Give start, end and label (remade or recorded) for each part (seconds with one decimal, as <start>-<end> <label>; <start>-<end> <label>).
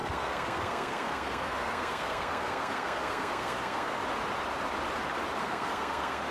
0.0-4.0 remade; 4.0-5.4 recorded; 5.4-6.3 remade